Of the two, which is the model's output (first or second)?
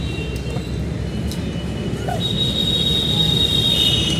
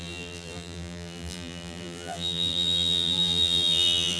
second